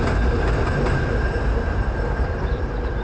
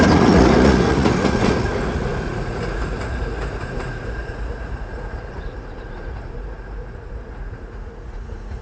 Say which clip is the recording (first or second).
first